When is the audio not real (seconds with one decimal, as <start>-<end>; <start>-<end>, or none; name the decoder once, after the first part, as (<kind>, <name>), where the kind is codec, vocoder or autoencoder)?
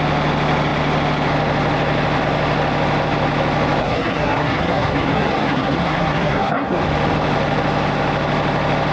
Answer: 3.8-6.8 (codec, SNAC)